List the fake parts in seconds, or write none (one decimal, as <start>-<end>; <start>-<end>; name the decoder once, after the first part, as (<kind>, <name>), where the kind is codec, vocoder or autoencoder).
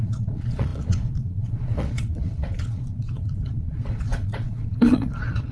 0.0-5.5 (vocoder, Vocos)